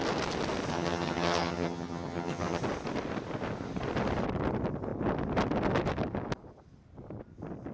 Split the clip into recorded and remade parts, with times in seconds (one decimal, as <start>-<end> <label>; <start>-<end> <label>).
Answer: 0.0-0.7 recorded; 0.7-2.6 remade; 2.6-7.7 recorded